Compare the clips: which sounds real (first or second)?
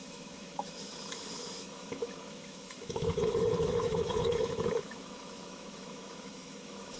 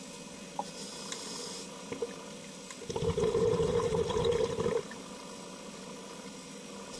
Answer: second